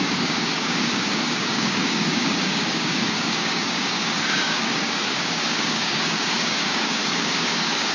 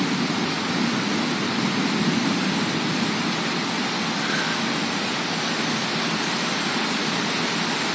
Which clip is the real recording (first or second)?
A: second